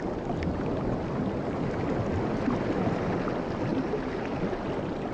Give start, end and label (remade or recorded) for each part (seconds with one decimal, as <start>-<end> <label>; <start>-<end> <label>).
0.0-3.7 recorded; 3.7-4.2 remade; 4.2-5.1 recorded